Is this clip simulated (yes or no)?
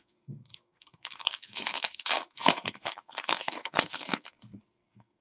yes